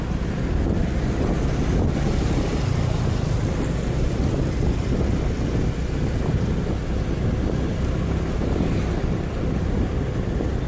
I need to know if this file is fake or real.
real